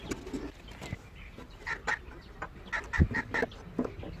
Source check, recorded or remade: recorded